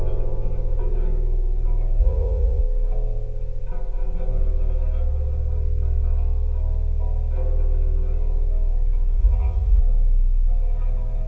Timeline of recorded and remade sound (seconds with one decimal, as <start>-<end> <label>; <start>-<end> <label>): 0.0-2.0 recorded; 2.0-2.6 remade; 2.6-9.2 recorded; 9.2-9.8 remade; 9.8-11.3 recorded